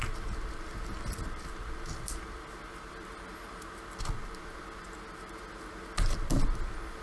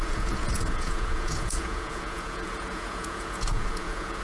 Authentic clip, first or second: first